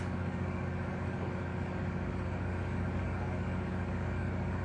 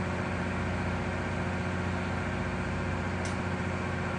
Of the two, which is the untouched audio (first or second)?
second